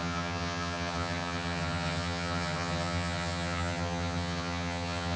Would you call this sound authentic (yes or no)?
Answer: no